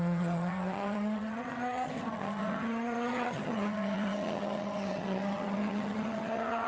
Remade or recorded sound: remade